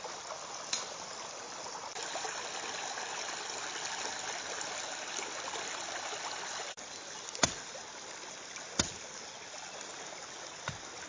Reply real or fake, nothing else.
real